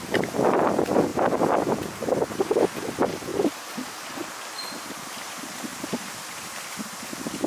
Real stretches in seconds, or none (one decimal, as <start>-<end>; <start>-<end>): 0.0-7.5